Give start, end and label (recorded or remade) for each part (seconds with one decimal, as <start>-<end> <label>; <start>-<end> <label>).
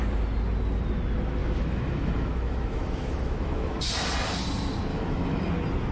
0.0-1.4 recorded; 1.4-3.8 remade; 3.8-4.9 recorded; 4.9-5.5 remade; 5.5-5.9 recorded